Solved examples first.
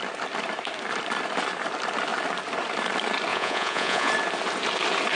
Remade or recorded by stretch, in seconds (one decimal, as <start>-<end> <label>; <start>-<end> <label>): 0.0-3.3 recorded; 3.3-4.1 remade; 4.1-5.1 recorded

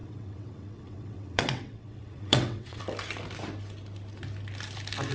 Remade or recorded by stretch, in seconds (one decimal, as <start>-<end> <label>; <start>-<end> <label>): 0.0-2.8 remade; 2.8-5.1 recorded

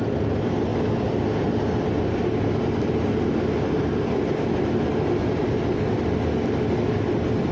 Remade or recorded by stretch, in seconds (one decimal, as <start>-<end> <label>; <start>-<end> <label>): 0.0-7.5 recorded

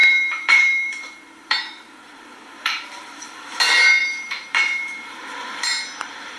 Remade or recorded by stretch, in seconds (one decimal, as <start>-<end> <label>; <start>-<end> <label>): 0.0-2.9 remade; 2.9-4.0 recorded; 4.0-6.4 remade